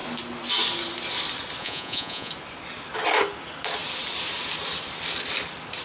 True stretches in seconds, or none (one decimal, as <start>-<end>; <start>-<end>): 0.0-1.6; 2.3-5.8